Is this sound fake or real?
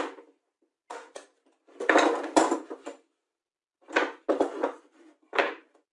real